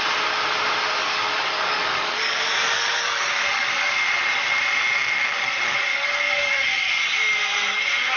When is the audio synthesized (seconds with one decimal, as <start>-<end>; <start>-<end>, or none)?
1.0-3.9; 5.9-7.0